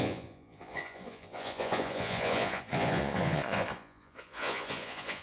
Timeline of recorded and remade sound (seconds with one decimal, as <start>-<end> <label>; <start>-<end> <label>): 0.0-5.2 remade